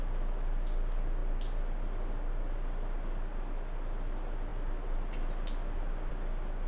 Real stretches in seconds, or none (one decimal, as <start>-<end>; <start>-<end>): 0.0-6.7